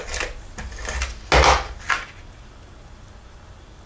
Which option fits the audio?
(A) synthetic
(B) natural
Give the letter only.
B